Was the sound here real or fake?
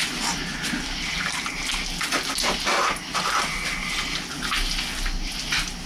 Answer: real